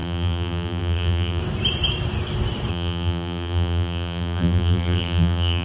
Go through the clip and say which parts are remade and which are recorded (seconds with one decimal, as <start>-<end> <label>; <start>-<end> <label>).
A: 0.0-1.4 remade; 1.4-2.7 recorded; 2.7-5.6 remade